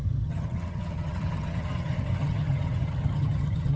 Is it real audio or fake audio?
fake